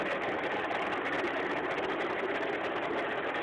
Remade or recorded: recorded